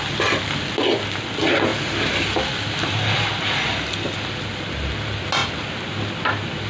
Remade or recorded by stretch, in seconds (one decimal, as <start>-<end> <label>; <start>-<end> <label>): 0.0-6.7 recorded